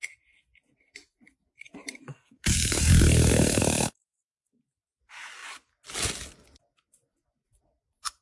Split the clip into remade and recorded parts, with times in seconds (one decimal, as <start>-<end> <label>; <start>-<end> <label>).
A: 0.0-2.1 recorded; 2.1-4.6 remade; 4.6-8.2 recorded